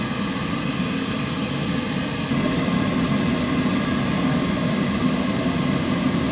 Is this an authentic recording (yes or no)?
yes